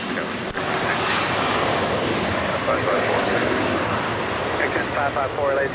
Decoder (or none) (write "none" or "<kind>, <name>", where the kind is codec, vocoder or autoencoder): none